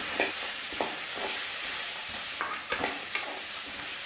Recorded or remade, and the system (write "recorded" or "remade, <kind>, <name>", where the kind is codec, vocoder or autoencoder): remade, vocoder, BigVGAN v2